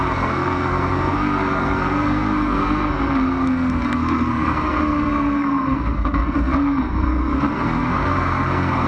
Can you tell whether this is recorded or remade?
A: remade